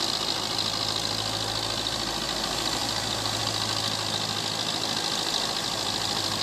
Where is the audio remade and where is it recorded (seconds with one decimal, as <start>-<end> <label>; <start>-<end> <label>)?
0.0-6.4 recorded